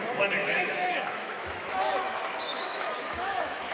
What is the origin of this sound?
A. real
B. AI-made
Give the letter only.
B